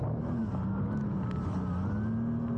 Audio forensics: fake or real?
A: real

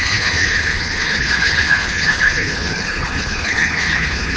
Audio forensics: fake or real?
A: fake